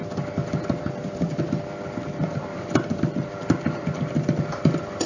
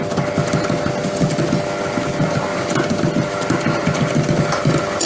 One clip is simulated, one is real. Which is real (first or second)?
second